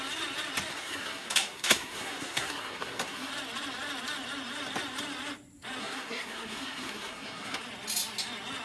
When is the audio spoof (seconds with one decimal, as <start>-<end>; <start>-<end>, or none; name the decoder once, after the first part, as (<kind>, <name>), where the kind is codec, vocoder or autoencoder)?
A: 0.7-3.3 (codec, SNAC); 5.8-7.6